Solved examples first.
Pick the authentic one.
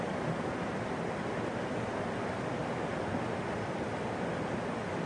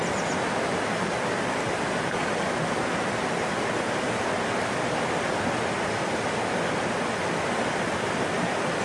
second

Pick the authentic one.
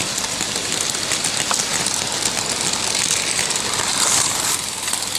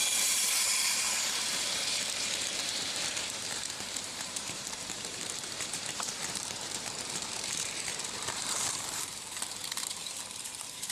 first